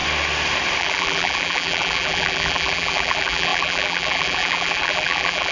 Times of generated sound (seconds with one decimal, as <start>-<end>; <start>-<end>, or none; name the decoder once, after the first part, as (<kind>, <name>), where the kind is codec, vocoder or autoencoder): 0.8-5.5 (vocoder, BigVGAN v2)